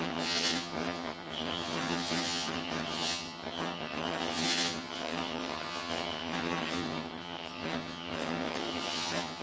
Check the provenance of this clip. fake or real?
fake